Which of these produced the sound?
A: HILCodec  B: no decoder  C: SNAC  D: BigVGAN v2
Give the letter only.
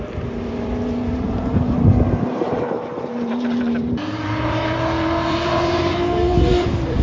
D